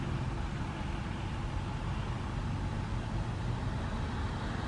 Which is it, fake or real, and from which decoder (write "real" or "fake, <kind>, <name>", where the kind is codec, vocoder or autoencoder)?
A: real